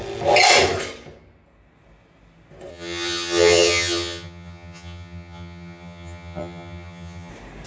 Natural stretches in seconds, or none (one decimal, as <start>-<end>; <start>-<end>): 0.0-2.7; 7.3-7.7

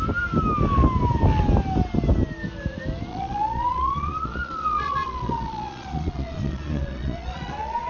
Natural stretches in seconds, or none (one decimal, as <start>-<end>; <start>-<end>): 0.0-3.1

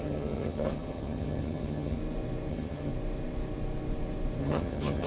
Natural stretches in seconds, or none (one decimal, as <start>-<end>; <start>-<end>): 2.0-2.5; 2.9-4.4

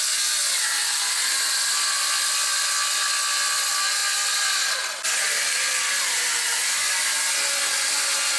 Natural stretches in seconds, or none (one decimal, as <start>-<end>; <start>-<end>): 0.0-8.4